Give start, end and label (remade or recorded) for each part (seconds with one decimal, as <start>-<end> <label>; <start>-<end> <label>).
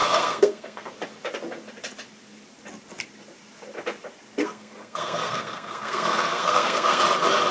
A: 0.0-0.9 remade; 0.9-4.4 recorded; 4.4-7.0 remade; 7.0-7.5 recorded